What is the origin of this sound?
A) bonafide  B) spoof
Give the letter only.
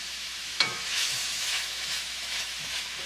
B